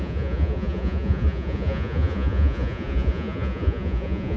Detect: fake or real fake